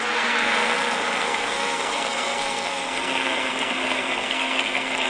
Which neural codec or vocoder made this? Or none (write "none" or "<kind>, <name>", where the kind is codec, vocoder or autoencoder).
codec, SNAC